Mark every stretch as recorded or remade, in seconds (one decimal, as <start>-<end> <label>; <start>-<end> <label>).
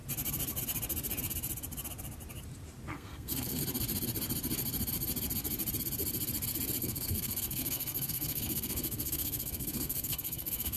0.0-2.9 recorded; 2.9-3.6 remade; 3.6-6.8 recorded; 6.8-10.8 remade